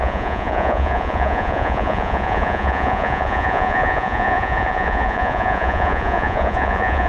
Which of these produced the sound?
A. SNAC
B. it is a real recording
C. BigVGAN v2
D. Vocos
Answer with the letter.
D